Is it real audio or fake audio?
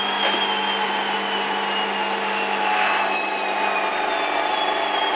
real